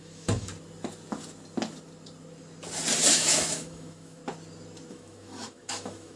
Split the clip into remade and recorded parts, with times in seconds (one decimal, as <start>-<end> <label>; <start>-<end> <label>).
0.0-0.5 remade; 0.5-3.1 recorded; 3.1-4.2 remade; 4.2-4.9 recorded; 4.9-6.2 remade